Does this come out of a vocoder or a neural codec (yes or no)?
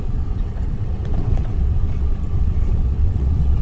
yes